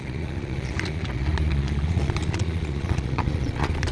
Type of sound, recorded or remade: remade